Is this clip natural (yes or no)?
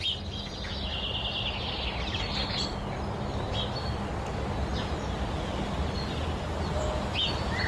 yes